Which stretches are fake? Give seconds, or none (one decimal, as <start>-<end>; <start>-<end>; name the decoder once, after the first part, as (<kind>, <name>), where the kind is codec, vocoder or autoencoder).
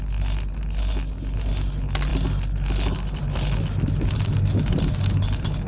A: none